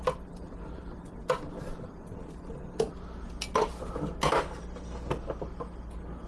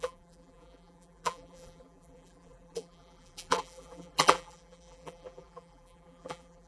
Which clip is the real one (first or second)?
first